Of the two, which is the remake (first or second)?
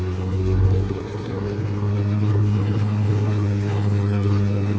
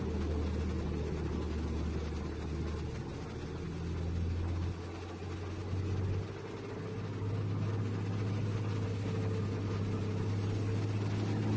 first